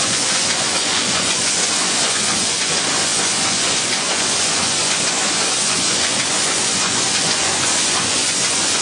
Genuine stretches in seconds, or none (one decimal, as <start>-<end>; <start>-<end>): none